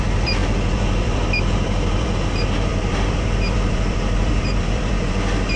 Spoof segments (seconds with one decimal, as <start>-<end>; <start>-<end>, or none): 0.0-5.6